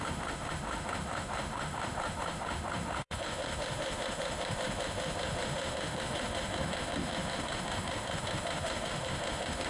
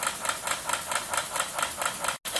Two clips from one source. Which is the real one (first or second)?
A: second